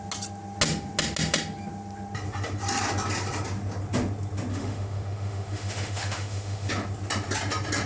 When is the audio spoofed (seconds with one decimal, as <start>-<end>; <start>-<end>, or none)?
4.5-6.7